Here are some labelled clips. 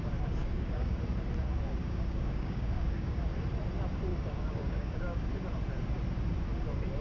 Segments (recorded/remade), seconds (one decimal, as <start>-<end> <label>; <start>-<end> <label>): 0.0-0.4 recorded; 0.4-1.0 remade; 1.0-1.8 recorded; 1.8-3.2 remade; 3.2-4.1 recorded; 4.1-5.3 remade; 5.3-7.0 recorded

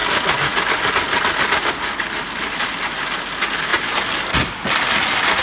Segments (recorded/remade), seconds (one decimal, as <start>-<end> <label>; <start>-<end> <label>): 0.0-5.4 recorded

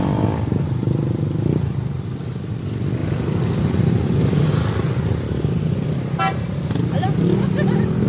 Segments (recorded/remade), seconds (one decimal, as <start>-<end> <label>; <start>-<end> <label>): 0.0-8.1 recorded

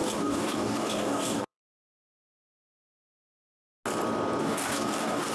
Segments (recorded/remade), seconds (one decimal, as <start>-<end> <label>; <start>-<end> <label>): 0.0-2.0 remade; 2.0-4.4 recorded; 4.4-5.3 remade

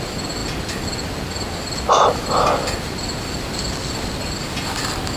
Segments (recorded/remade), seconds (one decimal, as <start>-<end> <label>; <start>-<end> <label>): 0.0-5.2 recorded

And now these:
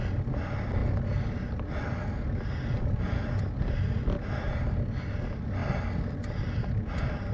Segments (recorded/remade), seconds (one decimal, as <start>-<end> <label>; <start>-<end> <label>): 0.0-7.3 recorded